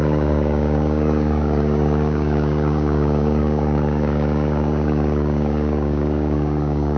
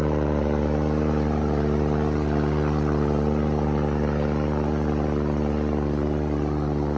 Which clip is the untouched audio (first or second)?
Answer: second